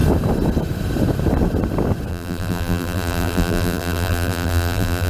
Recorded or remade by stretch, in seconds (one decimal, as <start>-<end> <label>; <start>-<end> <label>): 0.0-2.1 recorded; 2.1-5.1 remade